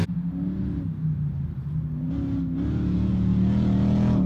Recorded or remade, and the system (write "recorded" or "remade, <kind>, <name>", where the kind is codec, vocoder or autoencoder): recorded